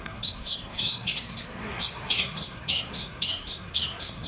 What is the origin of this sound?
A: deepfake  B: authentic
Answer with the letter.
A